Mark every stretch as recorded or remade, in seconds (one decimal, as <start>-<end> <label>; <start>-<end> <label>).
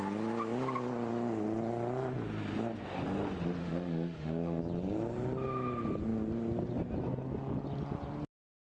0.0-3.6 recorded; 3.6-4.6 remade; 4.6-8.6 recorded